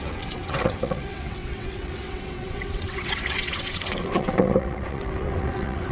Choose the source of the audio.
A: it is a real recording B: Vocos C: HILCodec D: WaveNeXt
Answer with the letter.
D